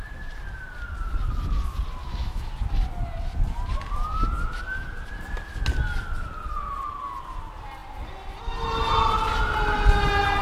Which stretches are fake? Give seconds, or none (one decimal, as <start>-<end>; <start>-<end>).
2.0-2.5